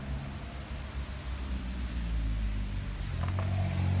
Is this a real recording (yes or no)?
yes